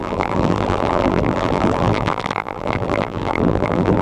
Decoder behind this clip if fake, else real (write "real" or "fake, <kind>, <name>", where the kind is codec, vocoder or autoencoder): fake, vocoder, BigVGAN v2